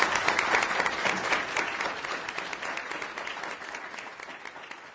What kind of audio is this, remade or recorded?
recorded